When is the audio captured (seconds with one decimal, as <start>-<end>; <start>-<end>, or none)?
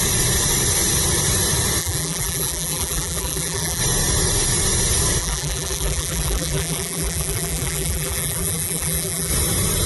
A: 0.0-1.8; 3.8-5.2; 9.3-9.9